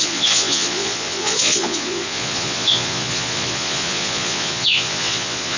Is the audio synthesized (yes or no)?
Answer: yes